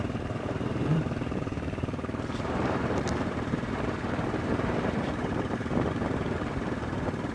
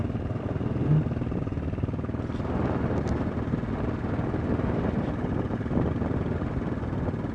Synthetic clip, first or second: first